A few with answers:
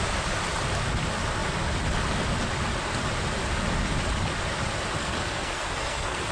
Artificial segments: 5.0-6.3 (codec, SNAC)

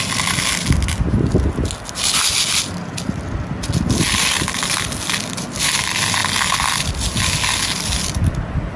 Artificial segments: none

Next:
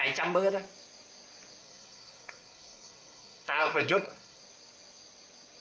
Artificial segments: 1.6-4.4 (codec, SNAC)